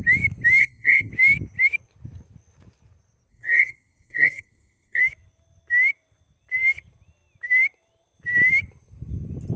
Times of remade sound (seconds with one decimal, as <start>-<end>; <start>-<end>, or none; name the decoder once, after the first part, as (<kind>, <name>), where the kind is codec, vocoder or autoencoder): 0.6-1.1 (codec, SNAC); 3.3-5.0